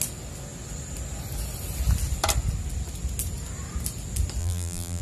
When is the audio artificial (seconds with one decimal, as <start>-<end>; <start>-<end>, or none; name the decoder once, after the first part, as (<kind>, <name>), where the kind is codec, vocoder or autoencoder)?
4.4-5.0 (vocoder, BigVGAN v2)